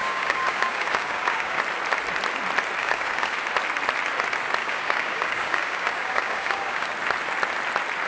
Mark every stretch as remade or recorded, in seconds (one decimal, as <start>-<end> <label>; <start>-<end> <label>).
0.0-1.6 remade; 1.6-2.8 recorded; 2.8-3.4 remade; 3.4-4.6 recorded; 4.6-6.9 remade; 6.9-8.1 recorded